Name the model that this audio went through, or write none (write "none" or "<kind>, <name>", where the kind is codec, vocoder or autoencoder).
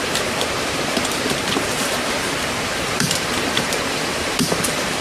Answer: vocoder, BigVGAN v2